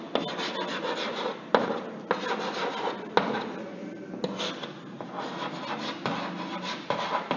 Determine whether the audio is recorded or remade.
recorded